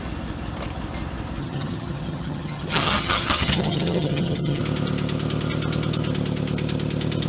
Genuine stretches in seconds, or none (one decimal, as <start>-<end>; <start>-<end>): 0.0-1.4; 4.6-7.3